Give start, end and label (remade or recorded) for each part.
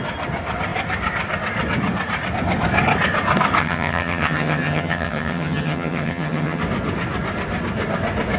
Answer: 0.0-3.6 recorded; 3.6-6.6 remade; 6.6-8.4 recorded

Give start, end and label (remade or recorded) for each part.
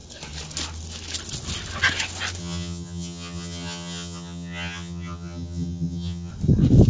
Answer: 0.0-2.4 recorded; 2.4-6.3 remade; 6.3-6.9 recorded